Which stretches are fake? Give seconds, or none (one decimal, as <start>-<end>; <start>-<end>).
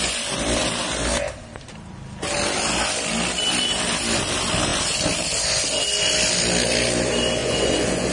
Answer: 7.4-8.1